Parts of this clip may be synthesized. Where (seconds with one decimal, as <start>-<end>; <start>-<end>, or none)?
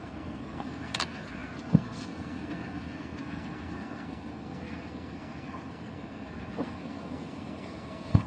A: 0.0-8.3